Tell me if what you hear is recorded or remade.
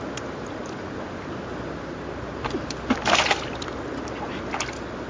recorded